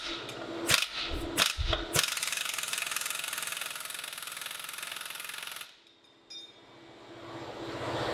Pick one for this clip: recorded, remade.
recorded